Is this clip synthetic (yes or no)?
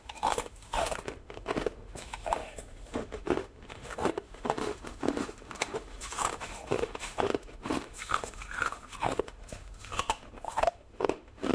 yes